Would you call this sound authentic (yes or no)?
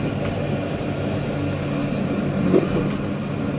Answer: yes